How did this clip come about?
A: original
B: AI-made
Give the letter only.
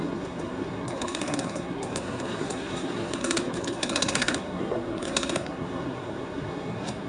B